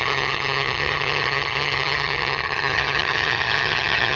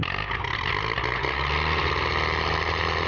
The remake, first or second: first